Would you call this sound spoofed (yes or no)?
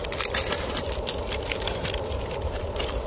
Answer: no